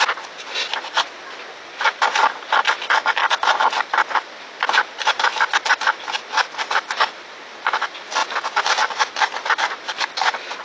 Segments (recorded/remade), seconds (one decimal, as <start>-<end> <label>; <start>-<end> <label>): 0.0-3.2 recorded; 3.2-7.2 remade; 7.2-10.6 recorded

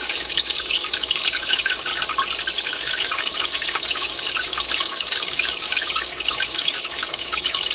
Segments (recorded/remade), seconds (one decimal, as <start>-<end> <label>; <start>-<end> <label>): 0.0-1.9 remade; 1.9-2.6 recorded; 2.6-7.7 remade

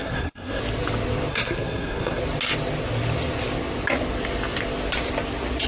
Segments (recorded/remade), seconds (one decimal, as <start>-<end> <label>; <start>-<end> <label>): 0.0-0.6 remade; 0.6-1.3 recorded; 1.3-2.2 remade; 2.2-5.7 recorded

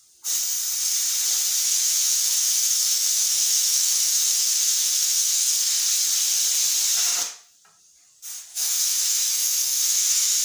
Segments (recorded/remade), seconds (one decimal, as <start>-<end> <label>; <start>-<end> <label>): 0.0-1.6 recorded; 1.6-5.7 remade; 5.7-8.5 recorded; 8.5-10.4 remade